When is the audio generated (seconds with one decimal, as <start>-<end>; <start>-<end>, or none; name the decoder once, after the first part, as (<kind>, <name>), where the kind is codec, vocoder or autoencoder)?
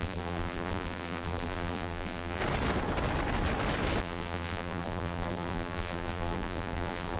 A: 0.0-2.4 (vocoder, BigVGAN v2); 4.0-7.2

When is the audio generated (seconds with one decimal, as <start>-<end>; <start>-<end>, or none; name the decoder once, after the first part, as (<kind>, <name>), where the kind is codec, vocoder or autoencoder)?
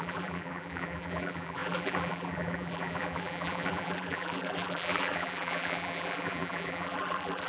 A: 0.0-7.5 (vocoder, BigVGAN v2)